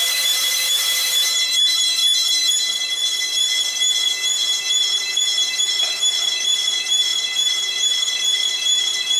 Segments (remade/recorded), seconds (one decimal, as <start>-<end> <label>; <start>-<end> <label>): 0.0-2.0 remade; 2.0-5.6 recorded; 5.6-9.2 remade